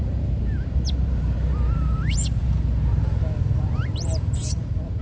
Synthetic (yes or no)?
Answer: yes